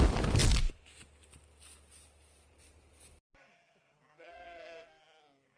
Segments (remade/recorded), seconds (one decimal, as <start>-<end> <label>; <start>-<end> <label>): 0.0-4.3 recorded; 4.3-5.0 remade; 5.0-5.6 recorded